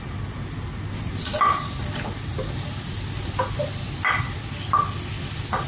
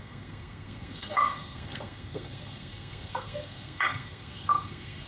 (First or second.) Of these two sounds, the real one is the first